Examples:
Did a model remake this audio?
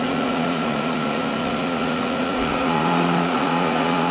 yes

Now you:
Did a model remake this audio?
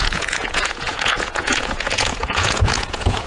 yes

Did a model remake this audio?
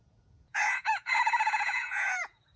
yes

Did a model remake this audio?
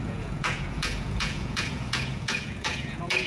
yes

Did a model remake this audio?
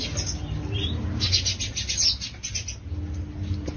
no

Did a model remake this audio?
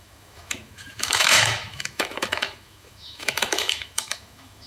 yes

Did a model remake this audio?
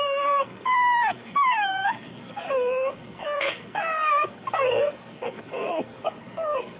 yes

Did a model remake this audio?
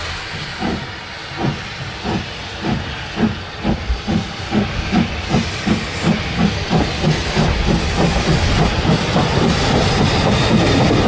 no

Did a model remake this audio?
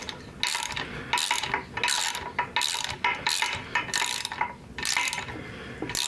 no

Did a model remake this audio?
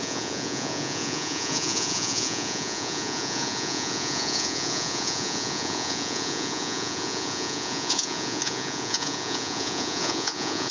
yes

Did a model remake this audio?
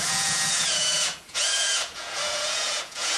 yes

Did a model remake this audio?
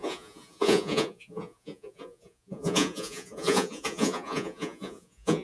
yes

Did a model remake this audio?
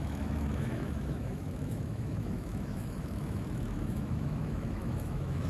yes